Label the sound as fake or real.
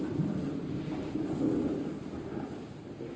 real